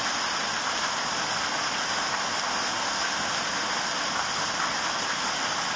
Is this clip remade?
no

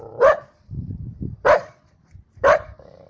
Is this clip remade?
yes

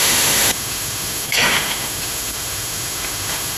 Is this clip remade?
yes